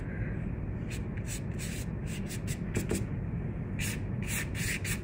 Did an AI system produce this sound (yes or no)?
no